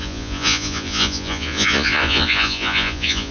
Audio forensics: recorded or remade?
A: remade